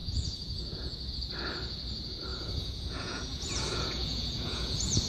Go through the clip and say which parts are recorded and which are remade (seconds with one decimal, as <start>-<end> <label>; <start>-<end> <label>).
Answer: 0.0-1.1 remade; 1.1-2.3 recorded; 2.3-5.1 remade

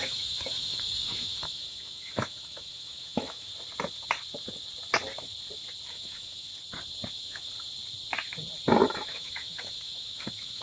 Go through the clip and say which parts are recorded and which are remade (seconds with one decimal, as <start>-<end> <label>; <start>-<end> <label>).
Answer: 0.0-3.5 remade; 3.5-5.9 recorded; 5.9-6.5 remade; 6.5-7.1 recorded; 7.1-7.5 remade; 7.5-8.9 recorded; 8.9-10.6 remade

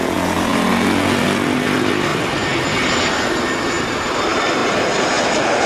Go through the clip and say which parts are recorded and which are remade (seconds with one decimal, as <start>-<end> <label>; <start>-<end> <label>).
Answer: 0.0-5.7 recorded

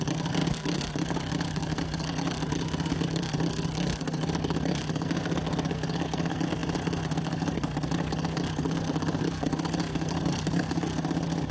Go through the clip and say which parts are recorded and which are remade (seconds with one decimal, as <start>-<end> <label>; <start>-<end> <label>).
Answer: 0.0-11.5 remade

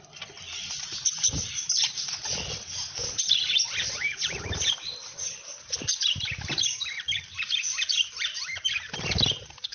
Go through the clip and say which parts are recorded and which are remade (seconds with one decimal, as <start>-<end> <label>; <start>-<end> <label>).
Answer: 0.0-3.0 remade; 3.0-3.5 recorded; 3.5-5.0 remade; 5.0-6.9 recorded; 6.9-9.7 remade

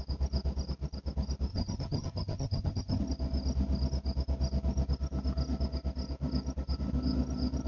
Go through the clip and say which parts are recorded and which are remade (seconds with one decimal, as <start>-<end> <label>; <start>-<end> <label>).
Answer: 0.0-1.5 recorded; 1.5-3.0 remade; 3.0-7.7 recorded

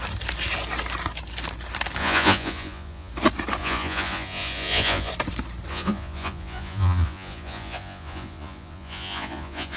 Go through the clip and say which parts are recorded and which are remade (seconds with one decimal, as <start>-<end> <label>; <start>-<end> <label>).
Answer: 0.0-2.0 recorded; 2.0-3.1 remade; 3.1-3.6 recorded; 3.6-5.1 remade; 5.1-5.7 recorded; 5.7-9.8 remade

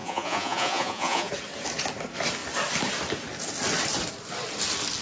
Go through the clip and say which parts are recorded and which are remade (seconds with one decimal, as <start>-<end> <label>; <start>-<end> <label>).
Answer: 0.0-1.3 remade; 1.3-5.0 recorded